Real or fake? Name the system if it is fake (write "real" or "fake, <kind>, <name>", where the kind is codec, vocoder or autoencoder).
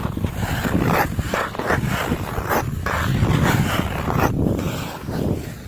real